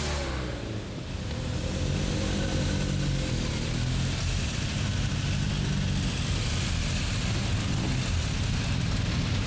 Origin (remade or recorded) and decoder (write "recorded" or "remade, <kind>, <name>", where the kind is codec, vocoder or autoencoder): recorded